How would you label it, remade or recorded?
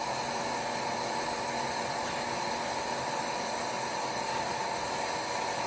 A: recorded